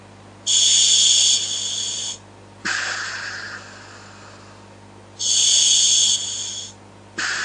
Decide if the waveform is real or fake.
real